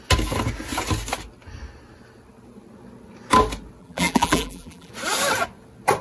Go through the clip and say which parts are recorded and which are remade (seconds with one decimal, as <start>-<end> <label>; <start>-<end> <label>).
0.0-3.8 recorded; 3.8-4.9 remade; 4.9-6.0 recorded